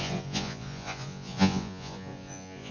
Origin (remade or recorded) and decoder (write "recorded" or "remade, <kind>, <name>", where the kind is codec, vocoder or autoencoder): remade, vocoder, Vocos